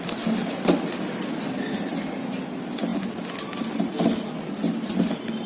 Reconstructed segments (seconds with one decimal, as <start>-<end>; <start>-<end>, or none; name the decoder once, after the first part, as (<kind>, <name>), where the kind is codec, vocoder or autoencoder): none